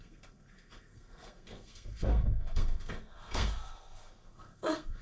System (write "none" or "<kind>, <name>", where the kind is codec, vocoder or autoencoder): codec, SNAC